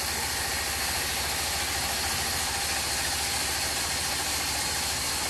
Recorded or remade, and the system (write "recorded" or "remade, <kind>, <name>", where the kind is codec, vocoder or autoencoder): recorded